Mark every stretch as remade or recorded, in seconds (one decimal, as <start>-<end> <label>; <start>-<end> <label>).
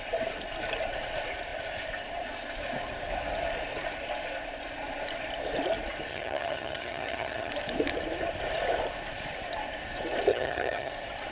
0.0-6.1 recorded; 6.1-7.5 remade; 7.5-10.3 recorded; 10.3-10.9 remade; 10.9-11.3 recorded